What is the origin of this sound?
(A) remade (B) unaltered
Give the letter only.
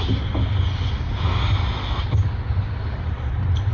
B